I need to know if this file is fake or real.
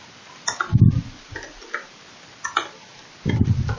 real